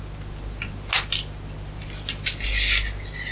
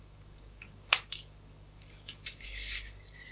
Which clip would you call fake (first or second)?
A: second